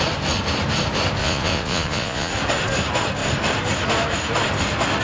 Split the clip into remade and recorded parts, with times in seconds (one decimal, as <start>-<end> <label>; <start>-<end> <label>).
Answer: 0.0-1.2 recorded; 1.2-2.3 remade; 2.3-5.0 recorded